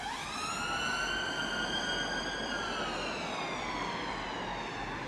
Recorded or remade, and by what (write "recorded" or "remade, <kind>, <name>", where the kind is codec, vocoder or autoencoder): recorded